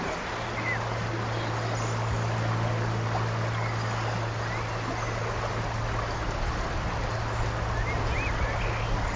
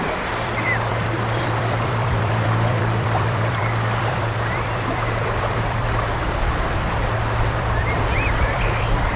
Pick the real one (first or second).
first